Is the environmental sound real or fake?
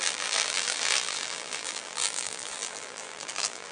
fake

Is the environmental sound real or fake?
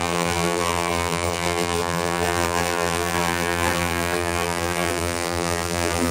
fake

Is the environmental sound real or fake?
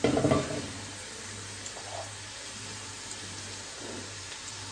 fake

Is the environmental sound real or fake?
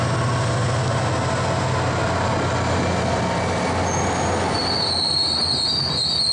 real